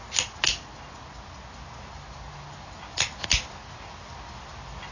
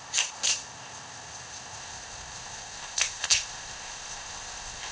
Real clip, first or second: first